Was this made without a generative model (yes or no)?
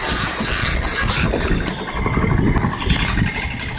yes